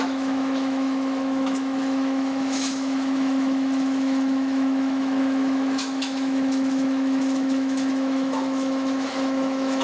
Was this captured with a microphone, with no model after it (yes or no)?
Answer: no